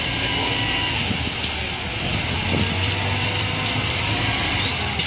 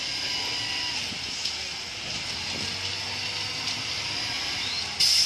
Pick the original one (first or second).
second